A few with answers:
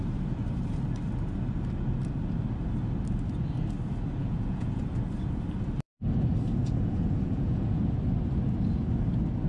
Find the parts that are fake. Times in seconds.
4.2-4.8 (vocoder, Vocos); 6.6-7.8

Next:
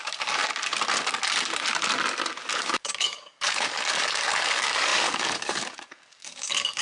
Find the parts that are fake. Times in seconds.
0.0-0.4 (codec, DAC); 2.5-6.8

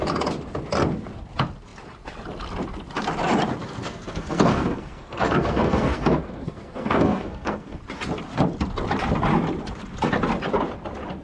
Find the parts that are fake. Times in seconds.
3.6-7.8 (codec, SNAC)